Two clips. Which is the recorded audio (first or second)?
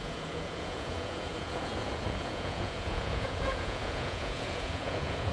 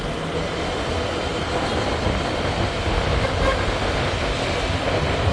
second